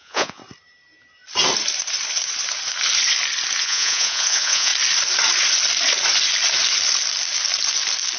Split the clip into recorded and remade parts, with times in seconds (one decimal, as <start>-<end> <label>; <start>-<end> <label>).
0.0-0.4 remade; 0.4-3.6 recorded; 3.6-4.7 remade; 4.7-8.2 recorded